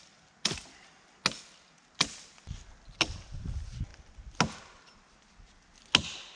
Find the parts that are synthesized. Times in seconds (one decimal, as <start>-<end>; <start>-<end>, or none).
none